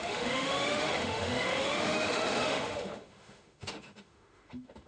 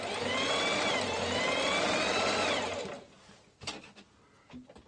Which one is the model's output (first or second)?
first